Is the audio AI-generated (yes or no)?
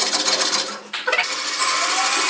no